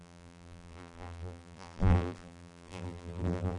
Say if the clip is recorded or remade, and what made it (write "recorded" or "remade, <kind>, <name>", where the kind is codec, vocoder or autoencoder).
remade, vocoder, BigVGAN v2